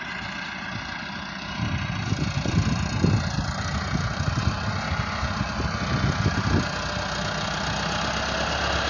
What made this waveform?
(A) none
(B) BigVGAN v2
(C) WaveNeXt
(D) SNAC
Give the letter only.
A